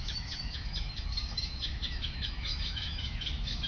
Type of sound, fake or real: fake